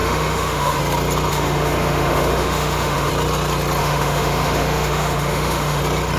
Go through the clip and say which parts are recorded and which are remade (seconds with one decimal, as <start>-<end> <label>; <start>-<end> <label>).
0.0-0.8 remade; 0.8-1.3 recorded; 1.3-3.1 remade; 3.1-3.8 recorded; 3.8-5.8 remade; 5.8-6.2 recorded